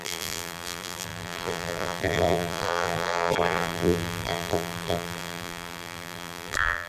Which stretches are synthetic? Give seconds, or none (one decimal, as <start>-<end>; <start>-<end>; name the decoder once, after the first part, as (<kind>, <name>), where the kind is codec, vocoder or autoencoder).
0.0-6.9 (vocoder, BigVGAN v2)